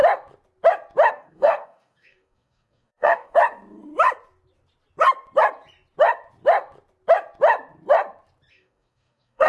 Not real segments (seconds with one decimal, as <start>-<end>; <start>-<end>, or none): 1.1-3.4; 8.5-9.5